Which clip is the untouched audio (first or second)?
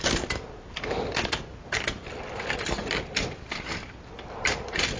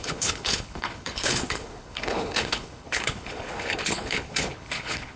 first